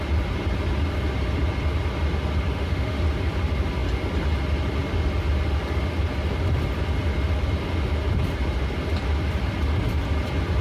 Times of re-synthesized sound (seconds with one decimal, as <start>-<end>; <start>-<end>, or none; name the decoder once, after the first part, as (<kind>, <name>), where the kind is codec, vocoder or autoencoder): 2.5-3.0 (autoencoder, DAC-VAE)